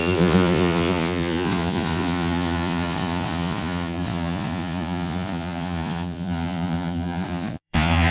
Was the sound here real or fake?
fake